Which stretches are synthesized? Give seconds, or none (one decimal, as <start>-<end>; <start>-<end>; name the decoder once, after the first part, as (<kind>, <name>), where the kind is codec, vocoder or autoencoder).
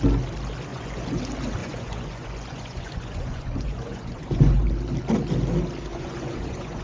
0.7-1.2 (vocoder, Vocos); 1.6-4.6; 5.9-6.8